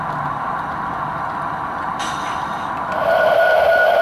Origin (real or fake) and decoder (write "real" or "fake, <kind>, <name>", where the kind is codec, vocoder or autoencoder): real